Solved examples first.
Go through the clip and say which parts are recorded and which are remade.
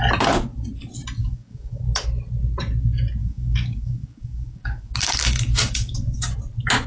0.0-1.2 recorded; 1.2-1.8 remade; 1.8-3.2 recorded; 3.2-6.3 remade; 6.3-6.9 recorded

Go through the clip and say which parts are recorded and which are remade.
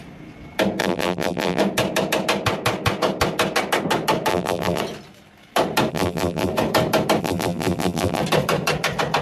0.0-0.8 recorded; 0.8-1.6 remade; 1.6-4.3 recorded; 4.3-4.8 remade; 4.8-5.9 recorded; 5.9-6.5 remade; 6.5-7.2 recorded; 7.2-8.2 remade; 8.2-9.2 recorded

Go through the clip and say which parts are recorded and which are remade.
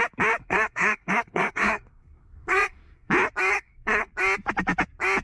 0.0-0.4 recorded; 0.4-3.1 remade; 3.1-3.5 recorded; 3.5-4.1 remade; 4.1-5.2 recorded